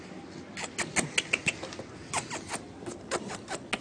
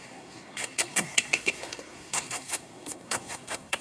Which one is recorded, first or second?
first